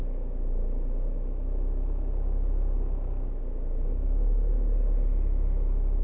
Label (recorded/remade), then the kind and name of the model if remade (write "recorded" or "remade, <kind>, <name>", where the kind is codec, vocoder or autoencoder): recorded